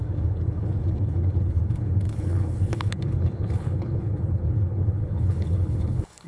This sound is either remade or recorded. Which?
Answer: remade